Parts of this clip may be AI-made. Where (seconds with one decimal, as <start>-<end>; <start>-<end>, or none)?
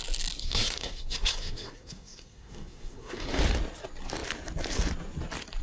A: 0.4-3.4